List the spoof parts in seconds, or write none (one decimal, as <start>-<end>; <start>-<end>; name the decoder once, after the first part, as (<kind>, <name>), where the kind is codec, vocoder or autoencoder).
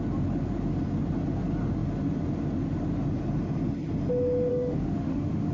4.5-5.5 (autoencoder, DAC-VAE)